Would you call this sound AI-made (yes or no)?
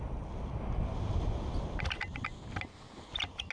no